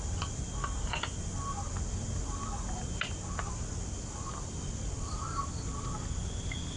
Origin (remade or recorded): recorded